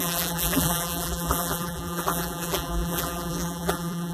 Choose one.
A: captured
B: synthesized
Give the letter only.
B